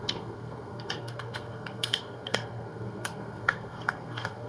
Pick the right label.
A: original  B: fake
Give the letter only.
B